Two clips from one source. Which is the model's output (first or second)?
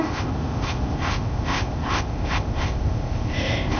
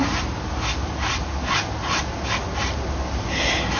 first